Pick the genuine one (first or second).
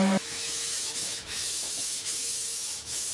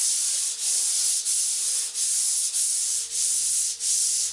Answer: second